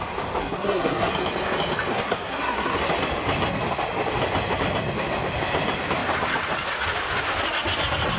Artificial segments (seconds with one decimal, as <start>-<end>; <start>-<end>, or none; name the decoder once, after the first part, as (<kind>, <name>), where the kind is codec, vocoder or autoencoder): 0.4-1.1 (codec, SNAC); 1.9-2.8